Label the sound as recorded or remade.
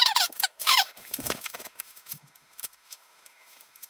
remade